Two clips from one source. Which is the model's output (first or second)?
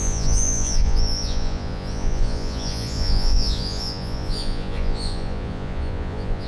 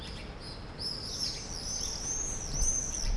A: first